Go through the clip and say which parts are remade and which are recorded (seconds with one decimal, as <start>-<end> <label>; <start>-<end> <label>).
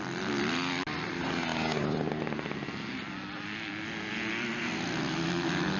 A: 0.0-5.8 recorded